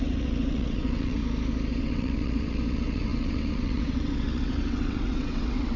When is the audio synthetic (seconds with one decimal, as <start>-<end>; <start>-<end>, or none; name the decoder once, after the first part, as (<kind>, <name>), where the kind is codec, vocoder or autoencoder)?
0.0-1.2 (vocoder, WaveNeXt); 1.8-5.8